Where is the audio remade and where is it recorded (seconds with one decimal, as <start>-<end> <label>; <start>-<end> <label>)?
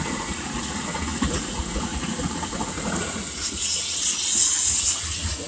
0.0-5.5 remade